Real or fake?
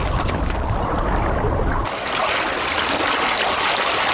real